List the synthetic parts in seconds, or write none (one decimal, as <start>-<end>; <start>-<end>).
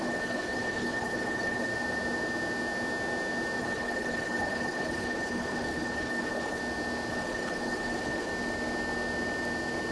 0.0-1.7; 3.6-6.6; 7.1-8.3